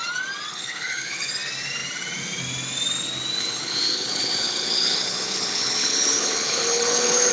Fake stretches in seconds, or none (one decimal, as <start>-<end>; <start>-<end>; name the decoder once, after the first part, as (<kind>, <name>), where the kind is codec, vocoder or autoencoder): 0.5-1.3 (codec, HILCodec); 3.4-7.3